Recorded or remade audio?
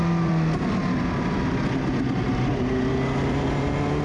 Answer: recorded